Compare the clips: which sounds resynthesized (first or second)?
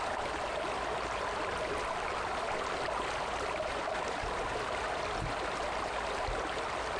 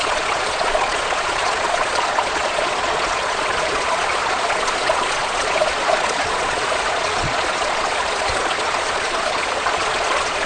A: second